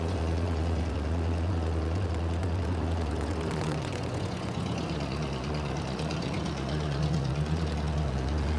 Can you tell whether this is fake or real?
fake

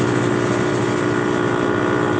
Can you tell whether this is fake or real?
real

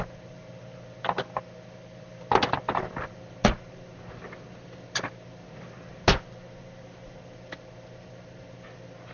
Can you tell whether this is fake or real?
real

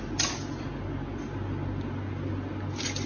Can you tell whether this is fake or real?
real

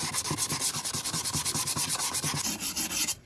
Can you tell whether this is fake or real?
fake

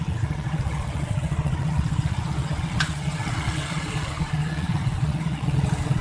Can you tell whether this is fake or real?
fake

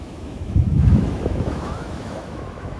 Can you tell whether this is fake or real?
fake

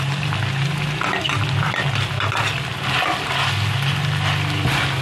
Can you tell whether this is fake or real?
real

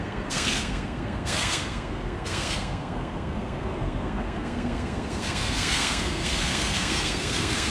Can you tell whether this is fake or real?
fake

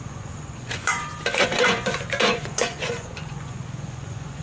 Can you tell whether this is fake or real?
fake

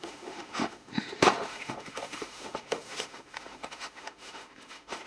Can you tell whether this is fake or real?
fake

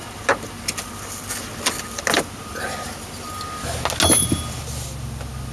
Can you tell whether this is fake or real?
real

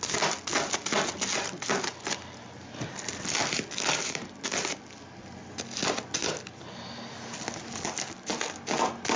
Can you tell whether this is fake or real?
real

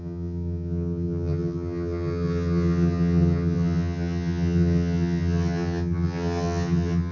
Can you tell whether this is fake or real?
fake